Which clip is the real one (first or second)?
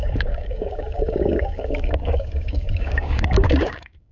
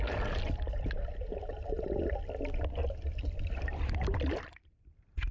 second